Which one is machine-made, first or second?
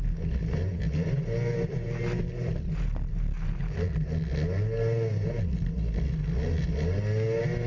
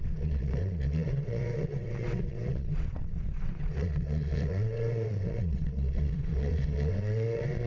second